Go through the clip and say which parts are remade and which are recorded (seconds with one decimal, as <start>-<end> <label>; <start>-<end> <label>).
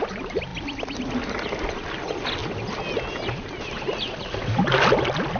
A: 0.0-5.4 recorded